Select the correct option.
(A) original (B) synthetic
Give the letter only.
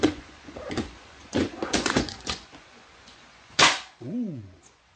B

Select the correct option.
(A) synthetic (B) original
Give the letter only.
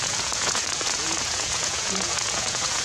A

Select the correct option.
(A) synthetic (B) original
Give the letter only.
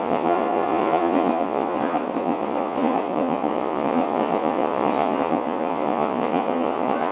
A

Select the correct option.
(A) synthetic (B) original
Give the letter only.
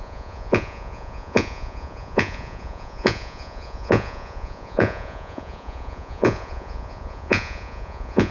A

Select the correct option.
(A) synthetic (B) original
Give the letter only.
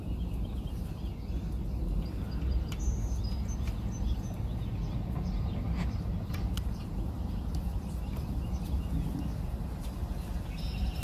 B